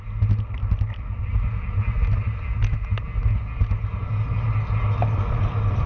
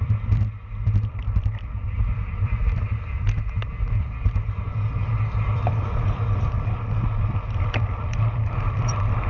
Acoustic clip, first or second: first